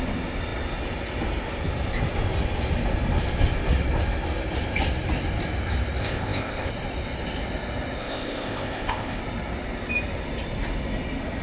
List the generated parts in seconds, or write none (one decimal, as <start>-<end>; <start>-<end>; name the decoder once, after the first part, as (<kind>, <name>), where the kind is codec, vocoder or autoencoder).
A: 6.0-6.7 (codec, ZipCodec); 8.0-9.2